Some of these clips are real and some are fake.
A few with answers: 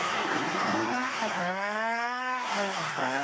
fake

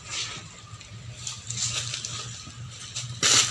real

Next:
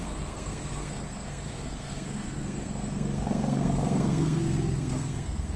fake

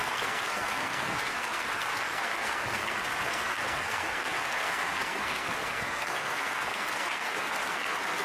fake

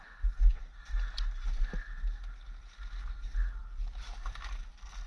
real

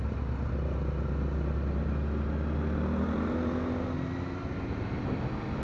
real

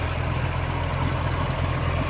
real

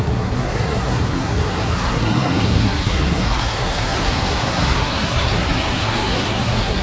fake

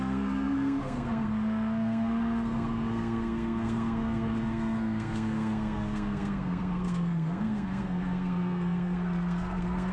fake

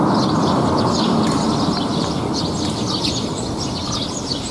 real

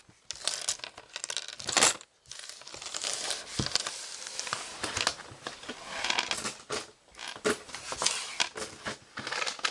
real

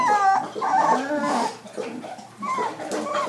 real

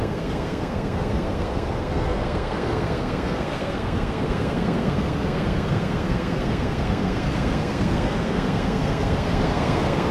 fake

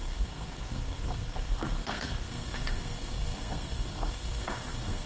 fake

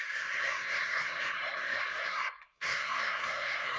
fake